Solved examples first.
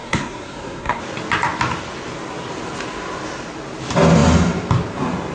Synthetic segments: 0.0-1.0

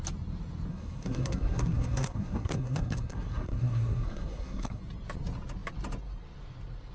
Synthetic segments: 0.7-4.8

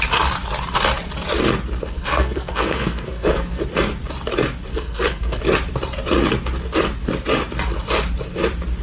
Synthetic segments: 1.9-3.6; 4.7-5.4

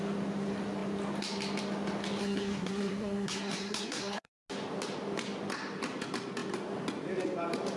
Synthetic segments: 2.2-4.3

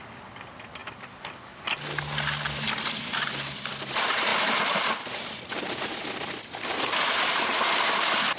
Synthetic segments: none

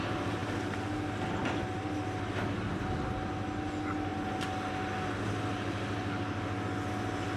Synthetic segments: none

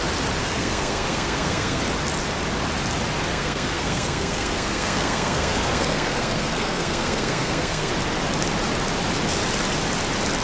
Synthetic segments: 0.4-1.8; 3.3-7.9

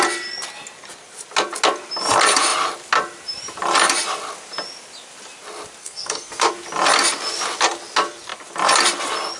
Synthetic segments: 5.8-6.5